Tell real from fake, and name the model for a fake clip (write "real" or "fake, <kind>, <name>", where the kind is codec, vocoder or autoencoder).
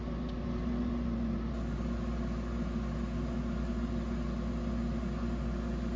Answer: real